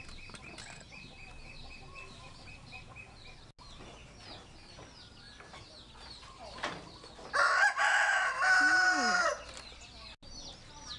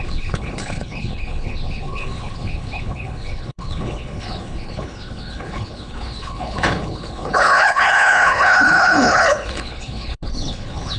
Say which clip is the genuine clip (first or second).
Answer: first